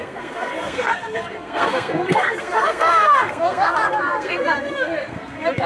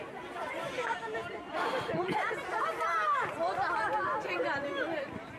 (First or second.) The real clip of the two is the second